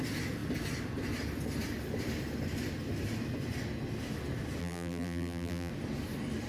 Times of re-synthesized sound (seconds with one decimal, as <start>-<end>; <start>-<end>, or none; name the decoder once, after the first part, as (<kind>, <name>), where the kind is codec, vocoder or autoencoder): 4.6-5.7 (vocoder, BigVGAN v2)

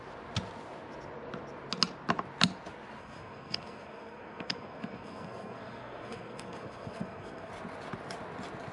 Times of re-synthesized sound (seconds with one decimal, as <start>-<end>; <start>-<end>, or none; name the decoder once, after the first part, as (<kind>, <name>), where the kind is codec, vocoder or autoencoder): 3.0-7.5 (codec, SNAC)

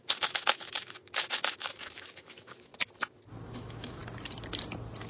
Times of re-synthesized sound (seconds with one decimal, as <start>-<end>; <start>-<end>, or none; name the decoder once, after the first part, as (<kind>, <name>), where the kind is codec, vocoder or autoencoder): 0.0-2.7 (autoencoder, DAC-VAE); 3.5-4.0